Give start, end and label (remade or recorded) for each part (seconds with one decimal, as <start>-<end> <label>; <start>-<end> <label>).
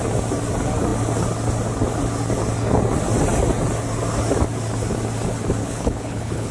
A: 0.0-5.6 recorded; 5.6-6.5 remade